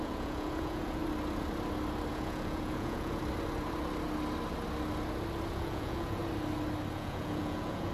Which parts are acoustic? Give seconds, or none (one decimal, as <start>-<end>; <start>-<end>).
1.0-2.1; 3.2-5.5; 6.2-6.9

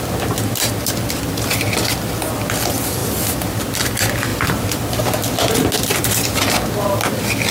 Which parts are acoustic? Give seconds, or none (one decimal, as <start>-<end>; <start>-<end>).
0.0-3.0; 3.6-4.3; 5.0-7.5

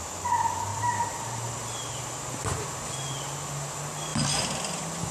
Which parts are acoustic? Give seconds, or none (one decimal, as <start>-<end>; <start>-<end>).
0.0-0.7; 2.4-4.1